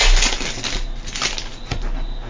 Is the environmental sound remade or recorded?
recorded